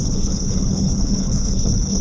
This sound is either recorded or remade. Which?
remade